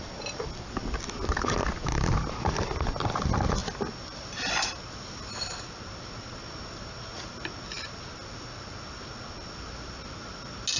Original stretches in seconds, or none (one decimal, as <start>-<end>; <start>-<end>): 0.0-10.8